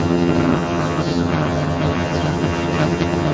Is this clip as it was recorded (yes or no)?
no